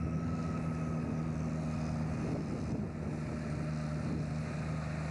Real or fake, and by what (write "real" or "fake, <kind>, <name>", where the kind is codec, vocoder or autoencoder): real